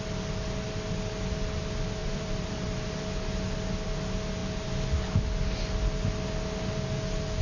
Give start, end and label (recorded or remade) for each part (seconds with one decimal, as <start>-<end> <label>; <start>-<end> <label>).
0.0-2.0 recorded; 2.0-2.9 remade; 2.9-7.4 recorded